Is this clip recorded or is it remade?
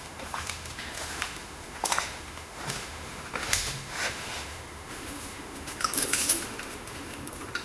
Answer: remade